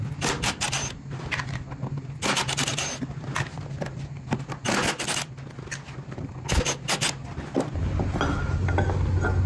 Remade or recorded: recorded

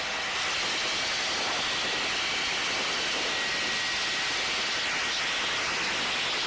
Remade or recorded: recorded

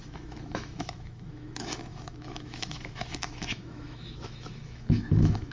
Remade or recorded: remade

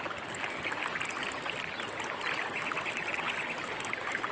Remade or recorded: recorded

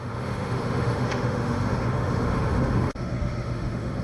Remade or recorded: remade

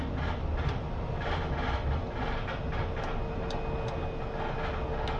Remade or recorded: recorded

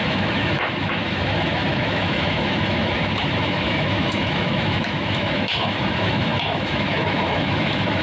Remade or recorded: remade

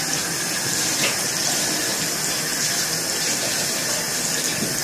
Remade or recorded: recorded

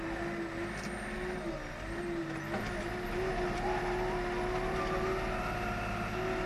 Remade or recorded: recorded